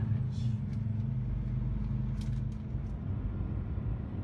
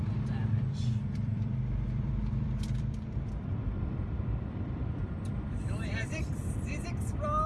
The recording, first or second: first